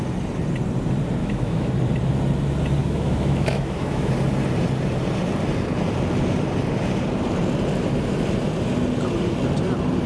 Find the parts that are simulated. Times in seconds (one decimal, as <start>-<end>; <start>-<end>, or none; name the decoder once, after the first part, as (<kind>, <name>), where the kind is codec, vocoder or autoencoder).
1.2-1.7 (autoencoder, DAC-VAE); 2.8-4.1